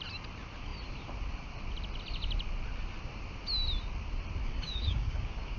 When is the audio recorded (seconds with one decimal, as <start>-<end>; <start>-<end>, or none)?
0.0-4.4